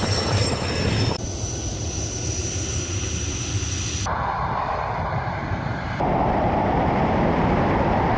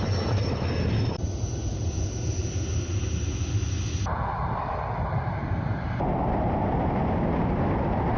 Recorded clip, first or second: second